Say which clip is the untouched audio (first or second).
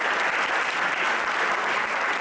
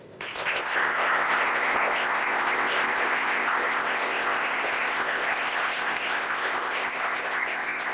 first